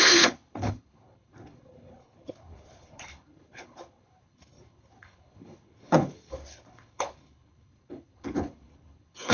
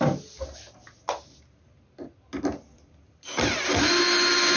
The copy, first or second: first